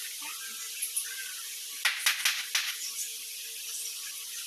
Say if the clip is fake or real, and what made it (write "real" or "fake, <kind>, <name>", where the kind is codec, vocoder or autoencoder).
real